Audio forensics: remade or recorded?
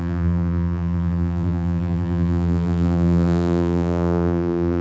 remade